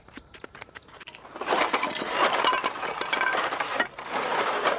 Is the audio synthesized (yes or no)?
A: yes